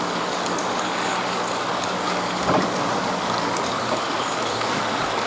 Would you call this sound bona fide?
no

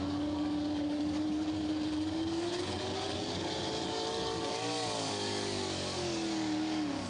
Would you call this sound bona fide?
no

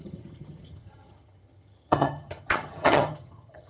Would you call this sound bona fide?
no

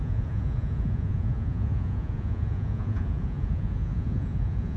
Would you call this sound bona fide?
no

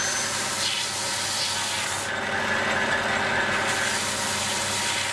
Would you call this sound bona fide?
yes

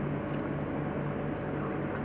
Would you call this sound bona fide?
yes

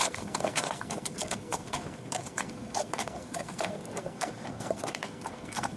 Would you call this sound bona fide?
no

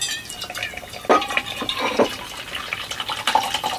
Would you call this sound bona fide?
yes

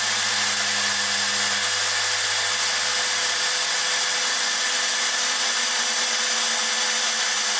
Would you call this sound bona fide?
yes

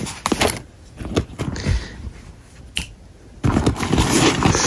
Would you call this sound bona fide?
yes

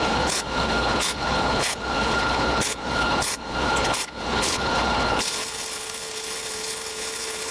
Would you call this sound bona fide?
no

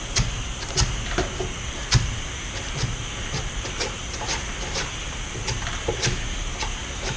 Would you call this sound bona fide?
yes